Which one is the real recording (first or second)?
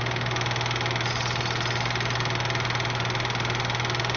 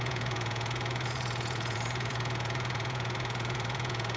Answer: first